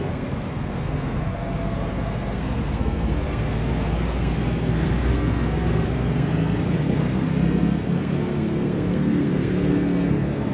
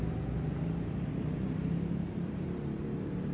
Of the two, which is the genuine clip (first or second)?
second